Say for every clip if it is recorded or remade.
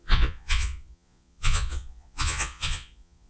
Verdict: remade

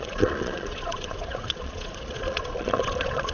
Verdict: remade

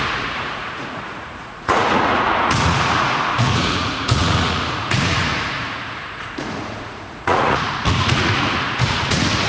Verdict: remade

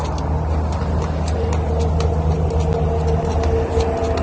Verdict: recorded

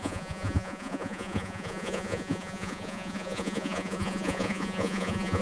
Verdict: remade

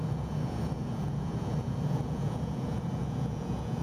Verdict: remade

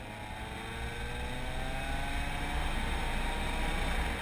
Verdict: recorded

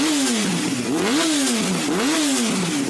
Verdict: recorded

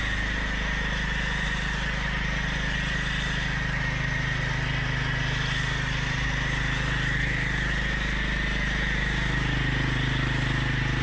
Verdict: recorded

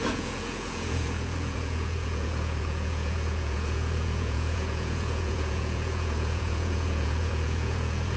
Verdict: remade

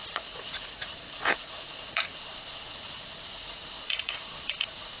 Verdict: remade